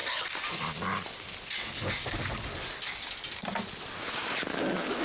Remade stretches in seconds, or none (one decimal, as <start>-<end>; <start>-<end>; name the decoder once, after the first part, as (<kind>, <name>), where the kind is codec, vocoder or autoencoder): none